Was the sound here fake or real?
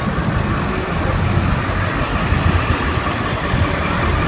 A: real